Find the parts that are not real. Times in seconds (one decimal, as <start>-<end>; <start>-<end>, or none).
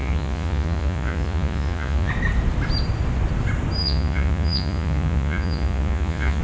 0.0-2.1; 3.8-6.4